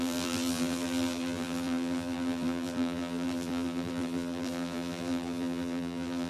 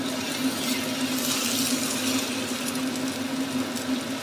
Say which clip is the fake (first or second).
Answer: first